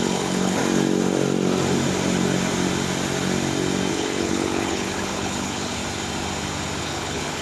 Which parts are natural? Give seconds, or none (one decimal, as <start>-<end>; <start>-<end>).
0.6-3.9; 5.8-6.8